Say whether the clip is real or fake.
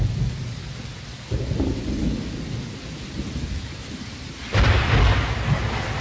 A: real